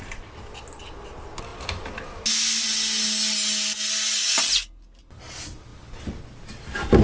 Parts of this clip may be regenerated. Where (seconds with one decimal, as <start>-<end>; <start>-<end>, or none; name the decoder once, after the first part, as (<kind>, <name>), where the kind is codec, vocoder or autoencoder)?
none